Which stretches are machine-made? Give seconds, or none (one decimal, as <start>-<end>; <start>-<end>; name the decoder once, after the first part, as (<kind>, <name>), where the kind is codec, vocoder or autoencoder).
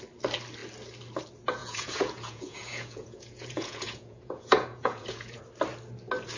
1.6-5.4 (vocoder, Vocos)